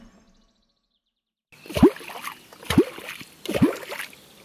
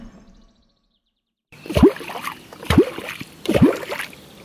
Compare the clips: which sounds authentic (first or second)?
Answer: first